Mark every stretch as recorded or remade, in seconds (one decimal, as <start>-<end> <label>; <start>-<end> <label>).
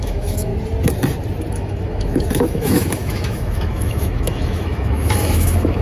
0.0-0.5 remade; 0.5-1.5 recorded; 1.5-5.8 remade